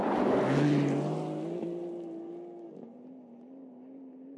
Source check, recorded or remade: recorded